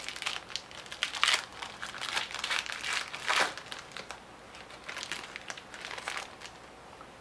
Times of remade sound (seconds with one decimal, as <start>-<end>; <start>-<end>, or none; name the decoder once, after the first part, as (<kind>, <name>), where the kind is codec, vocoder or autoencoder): none